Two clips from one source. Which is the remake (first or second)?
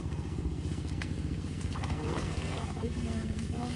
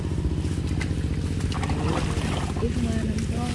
first